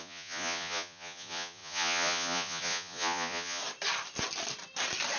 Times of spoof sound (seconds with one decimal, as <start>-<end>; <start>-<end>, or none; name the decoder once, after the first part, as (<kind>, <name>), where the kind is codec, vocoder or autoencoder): 0.0-3.6 (vocoder, Vocos)